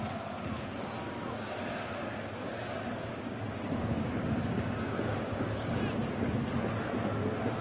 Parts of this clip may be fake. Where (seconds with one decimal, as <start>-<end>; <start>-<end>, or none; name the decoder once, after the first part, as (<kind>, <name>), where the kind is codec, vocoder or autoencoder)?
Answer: 2.6-5.8 (codec, DAC)